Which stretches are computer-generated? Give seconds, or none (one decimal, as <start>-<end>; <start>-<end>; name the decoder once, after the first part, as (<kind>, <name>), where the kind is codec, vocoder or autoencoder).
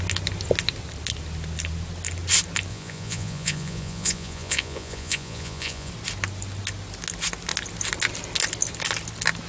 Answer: 2.7-5.9 (vocoder, Vocos)